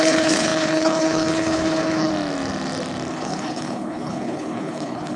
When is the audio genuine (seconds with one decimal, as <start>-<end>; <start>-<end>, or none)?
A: 2.1-3.1